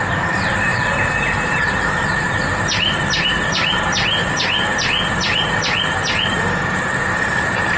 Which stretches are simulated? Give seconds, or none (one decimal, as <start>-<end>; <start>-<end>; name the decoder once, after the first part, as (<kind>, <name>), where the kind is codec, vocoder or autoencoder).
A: 0.0-4.2 (vocoder, BigVGAN v2); 7.0-7.8